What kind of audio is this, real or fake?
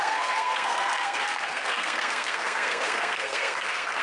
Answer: fake